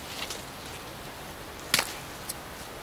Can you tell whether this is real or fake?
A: real